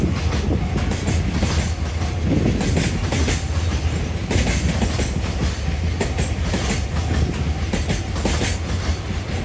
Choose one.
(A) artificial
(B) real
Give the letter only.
B